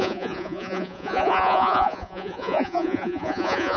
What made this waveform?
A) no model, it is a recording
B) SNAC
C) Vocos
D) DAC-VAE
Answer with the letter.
C